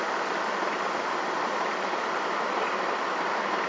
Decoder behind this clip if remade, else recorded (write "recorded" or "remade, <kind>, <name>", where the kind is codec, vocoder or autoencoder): remade, vocoder, BigVGAN v2